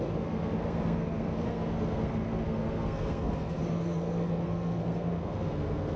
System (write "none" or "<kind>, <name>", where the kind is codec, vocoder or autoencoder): codec, SNAC